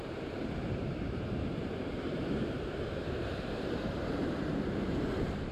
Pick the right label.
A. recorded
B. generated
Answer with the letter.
B